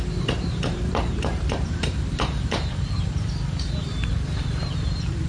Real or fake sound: fake